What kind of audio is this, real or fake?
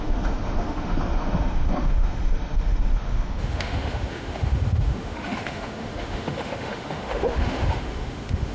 fake